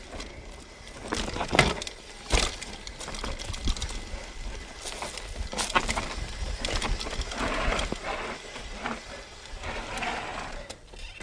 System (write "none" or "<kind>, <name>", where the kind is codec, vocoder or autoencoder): none